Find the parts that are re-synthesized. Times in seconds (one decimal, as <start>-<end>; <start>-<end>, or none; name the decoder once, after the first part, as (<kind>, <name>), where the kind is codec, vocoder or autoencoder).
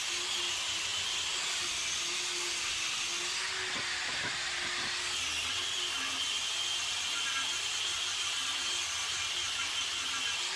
0.9-1.8 (vocoder, BigVGAN v2)